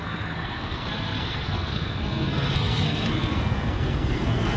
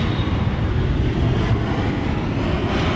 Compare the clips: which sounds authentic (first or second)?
second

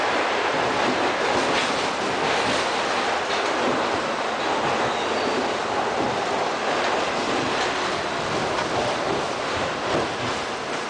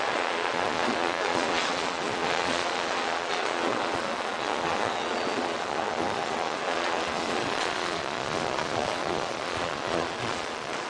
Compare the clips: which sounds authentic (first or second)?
first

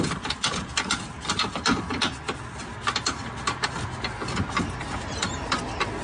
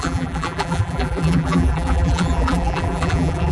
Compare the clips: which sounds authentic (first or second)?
first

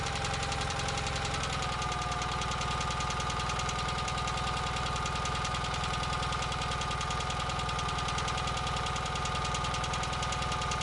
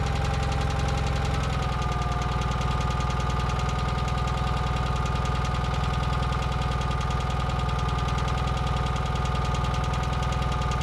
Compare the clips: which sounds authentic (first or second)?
second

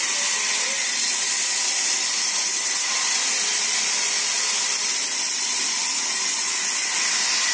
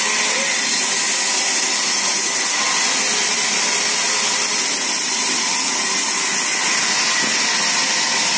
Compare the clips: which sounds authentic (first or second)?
second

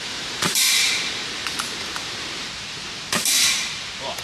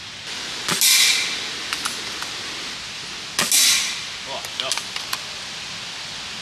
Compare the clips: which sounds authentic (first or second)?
second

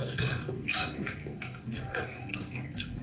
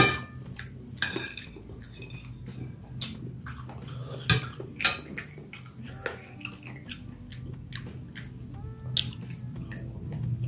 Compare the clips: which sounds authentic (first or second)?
second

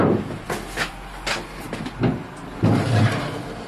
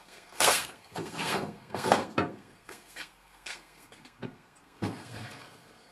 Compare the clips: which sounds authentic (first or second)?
first